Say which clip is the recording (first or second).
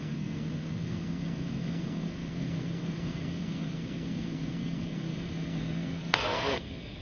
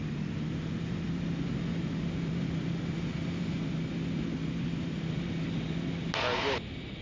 second